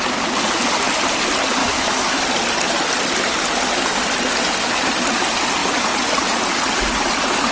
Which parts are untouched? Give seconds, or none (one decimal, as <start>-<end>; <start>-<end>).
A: 0.0-1.6; 2.2-7.5